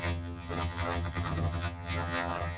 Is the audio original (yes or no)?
no